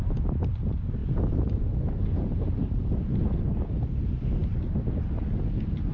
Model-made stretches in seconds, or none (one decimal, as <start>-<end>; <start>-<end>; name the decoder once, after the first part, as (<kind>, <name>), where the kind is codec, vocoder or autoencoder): 1.0-2.8 (vocoder, BigVGAN v2)